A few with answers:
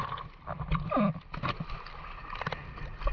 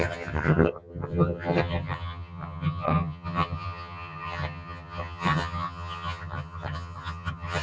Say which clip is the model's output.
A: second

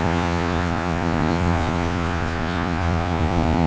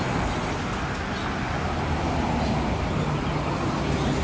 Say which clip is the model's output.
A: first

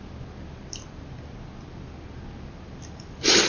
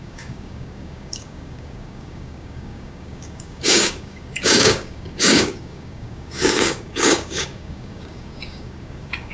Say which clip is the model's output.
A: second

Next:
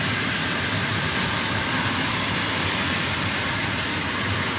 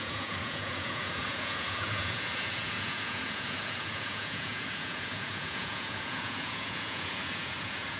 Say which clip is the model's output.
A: second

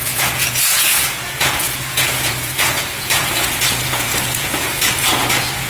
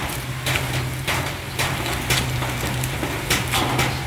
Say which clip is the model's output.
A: first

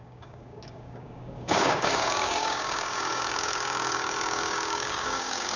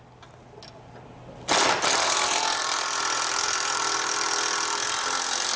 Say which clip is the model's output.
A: first